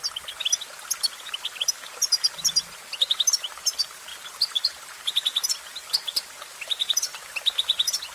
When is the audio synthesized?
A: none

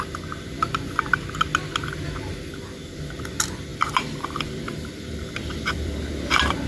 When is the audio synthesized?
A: 3.7-6.0 (vocoder, BigVGAN v2)